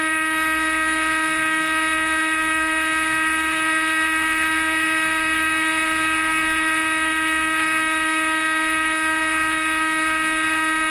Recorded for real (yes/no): no